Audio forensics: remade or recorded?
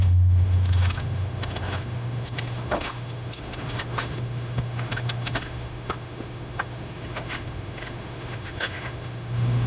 remade